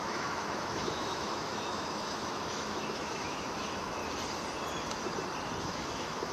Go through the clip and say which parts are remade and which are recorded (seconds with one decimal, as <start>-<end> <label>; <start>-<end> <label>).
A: 0.0-4.0 remade; 4.0-5.6 recorded; 5.6-6.3 remade